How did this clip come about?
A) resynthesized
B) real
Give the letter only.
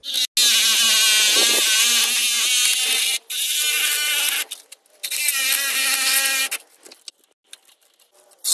B